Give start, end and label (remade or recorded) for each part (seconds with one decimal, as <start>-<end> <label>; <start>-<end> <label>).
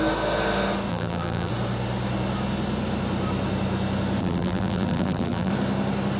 0.0-0.9 recorded; 0.9-1.5 remade; 1.5-4.2 recorded; 4.2-5.5 remade; 5.5-6.2 recorded